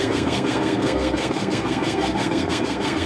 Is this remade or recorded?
remade